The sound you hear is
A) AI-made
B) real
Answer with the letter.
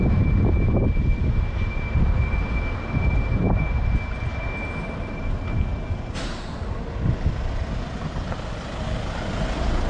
B